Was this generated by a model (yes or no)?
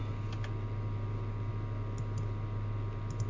no